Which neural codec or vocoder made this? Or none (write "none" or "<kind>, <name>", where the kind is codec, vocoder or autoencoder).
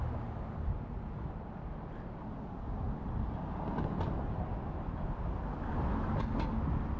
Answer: none